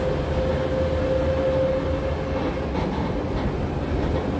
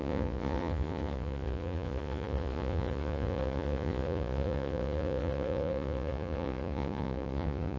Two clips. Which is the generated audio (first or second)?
second